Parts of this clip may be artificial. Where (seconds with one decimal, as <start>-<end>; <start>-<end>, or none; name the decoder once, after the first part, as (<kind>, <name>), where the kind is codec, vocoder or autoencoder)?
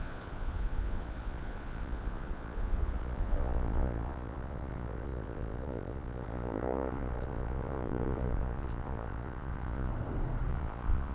0.0-9.9 (vocoder, Vocos); 10.5-11.1